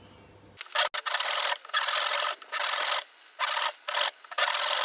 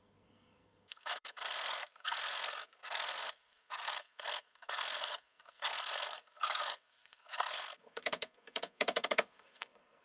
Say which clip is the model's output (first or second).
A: second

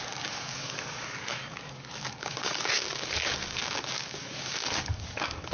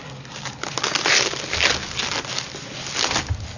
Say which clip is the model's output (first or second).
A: first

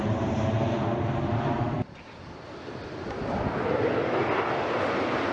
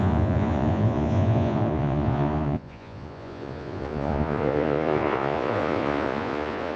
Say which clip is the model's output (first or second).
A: second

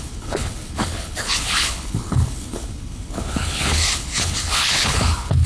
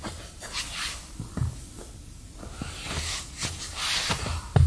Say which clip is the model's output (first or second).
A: first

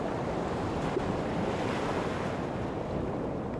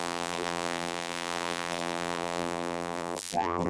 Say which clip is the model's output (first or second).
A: second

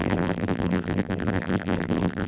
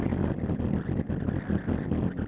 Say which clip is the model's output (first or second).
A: first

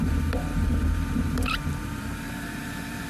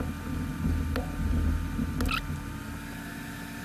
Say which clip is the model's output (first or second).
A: first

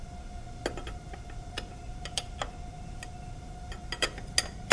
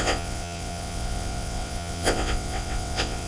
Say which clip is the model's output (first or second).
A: second